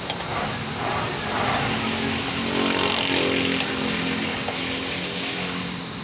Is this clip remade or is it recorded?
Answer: recorded